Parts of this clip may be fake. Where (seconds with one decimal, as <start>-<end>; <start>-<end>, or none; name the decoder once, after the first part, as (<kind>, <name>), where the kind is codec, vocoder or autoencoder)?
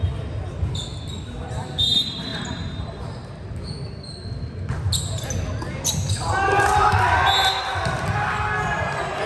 none